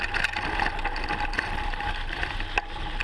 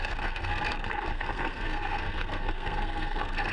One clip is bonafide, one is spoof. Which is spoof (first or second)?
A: second